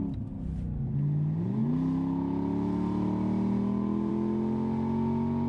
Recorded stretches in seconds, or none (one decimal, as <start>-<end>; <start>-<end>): 0.0-5.5